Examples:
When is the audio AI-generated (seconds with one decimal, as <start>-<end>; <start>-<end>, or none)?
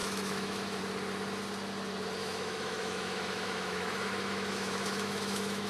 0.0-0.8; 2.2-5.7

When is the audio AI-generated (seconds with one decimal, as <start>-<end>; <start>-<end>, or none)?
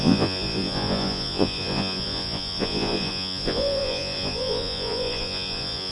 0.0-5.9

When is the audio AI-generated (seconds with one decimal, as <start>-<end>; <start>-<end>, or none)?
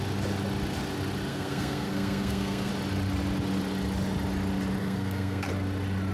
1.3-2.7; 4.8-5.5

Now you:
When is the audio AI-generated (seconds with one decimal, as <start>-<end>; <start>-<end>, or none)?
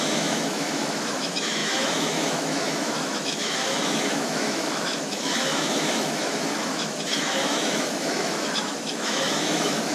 0.0-9.9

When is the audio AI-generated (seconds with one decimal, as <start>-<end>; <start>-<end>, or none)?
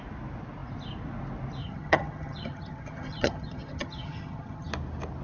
1.6-4.7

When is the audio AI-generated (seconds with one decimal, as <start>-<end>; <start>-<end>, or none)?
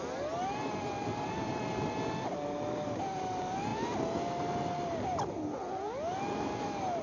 none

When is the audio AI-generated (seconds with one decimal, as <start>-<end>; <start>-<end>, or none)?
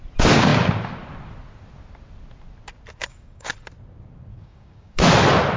3.0-3.5; 4.3-5.0